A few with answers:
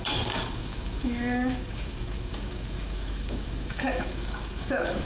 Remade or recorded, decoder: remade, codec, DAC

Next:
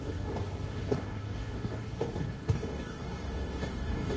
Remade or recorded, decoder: remade, codec, DAC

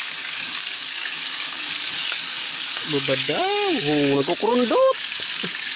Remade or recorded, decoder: remade, codec, DAC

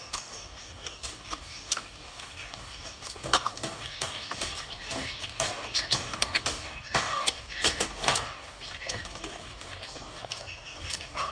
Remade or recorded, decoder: remade, codec, DAC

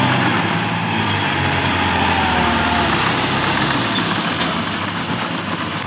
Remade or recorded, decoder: recorded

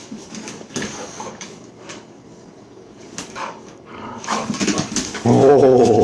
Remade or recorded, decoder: remade, codec, DAC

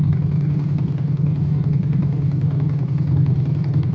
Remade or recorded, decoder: remade, codec, DAC